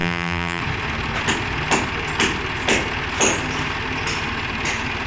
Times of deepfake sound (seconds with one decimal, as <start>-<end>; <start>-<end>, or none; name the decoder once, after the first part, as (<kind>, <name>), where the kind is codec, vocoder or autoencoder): 0.0-0.6 (vocoder, BigVGAN v2)